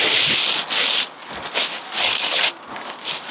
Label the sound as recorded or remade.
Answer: recorded